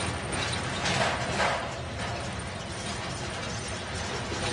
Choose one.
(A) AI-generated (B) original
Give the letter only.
B